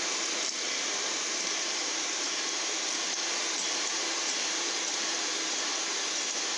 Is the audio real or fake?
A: fake